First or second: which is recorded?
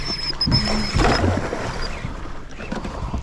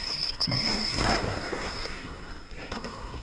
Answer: first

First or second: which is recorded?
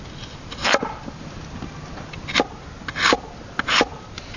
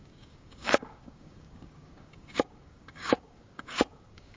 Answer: first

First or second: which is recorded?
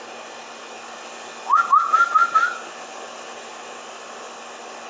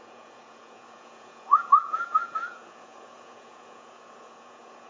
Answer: first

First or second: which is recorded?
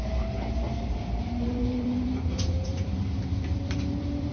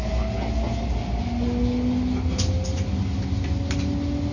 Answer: second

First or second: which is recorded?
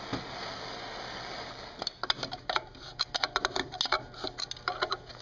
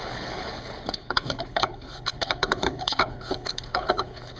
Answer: first